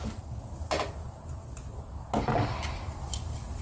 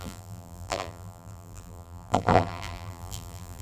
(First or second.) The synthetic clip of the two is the second